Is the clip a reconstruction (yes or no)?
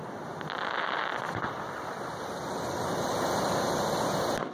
no